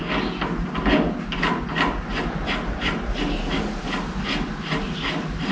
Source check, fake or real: real